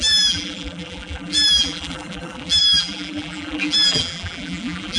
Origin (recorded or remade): remade